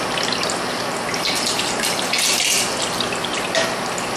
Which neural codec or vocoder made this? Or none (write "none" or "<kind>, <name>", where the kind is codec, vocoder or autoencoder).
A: none